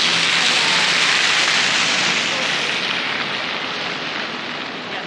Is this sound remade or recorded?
recorded